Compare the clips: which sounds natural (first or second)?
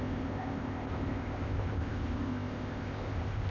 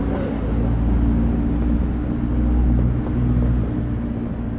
second